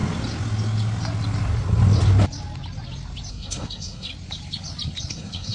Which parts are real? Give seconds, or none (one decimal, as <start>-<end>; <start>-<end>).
0.0-3.3; 4.1-5.1